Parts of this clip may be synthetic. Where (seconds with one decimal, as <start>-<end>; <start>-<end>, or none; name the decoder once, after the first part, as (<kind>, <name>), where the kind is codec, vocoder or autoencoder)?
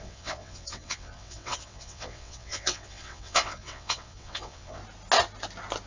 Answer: 0.0-4.8 (vocoder, WaveNeXt)